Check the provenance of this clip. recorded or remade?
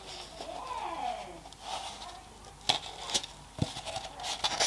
recorded